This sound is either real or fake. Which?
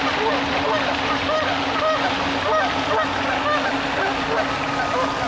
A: real